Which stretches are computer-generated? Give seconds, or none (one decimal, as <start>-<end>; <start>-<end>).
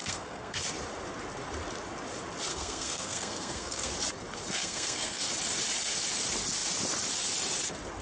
0.0-0.7; 2.5-3.9; 4.6-5.3